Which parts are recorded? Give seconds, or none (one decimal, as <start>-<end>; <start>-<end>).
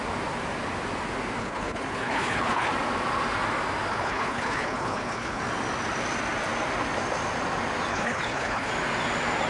0.0-1.4; 2.7-3.9; 5.4-7.9; 8.7-9.5